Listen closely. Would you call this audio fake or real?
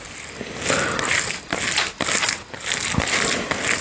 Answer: real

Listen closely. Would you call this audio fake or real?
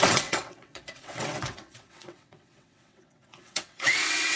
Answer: fake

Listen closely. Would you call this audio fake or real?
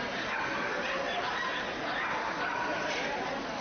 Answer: real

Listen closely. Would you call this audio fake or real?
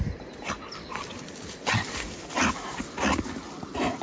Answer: real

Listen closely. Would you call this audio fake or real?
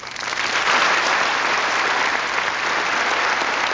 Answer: real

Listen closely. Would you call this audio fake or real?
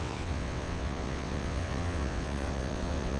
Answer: fake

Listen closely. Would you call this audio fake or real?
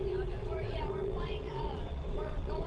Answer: fake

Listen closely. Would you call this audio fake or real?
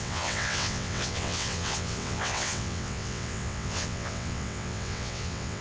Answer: fake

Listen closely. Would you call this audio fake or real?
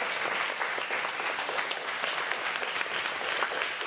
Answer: real